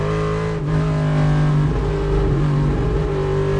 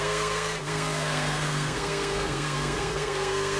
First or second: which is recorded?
first